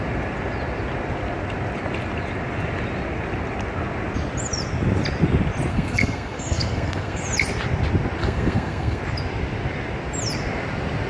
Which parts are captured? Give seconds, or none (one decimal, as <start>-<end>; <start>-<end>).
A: 0.0-5.7; 7.2-8.2; 9.0-11.1